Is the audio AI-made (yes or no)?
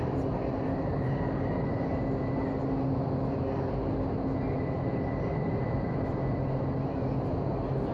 no